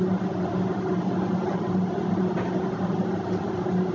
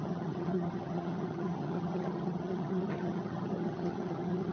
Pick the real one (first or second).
first